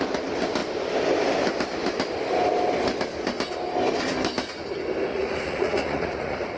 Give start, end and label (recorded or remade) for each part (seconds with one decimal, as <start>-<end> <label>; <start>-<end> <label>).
0.0-5.1 recorded; 5.1-6.6 remade